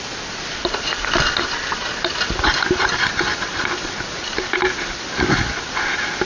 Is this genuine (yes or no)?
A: yes